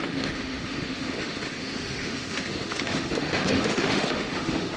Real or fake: fake